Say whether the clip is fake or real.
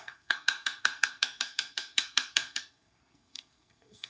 fake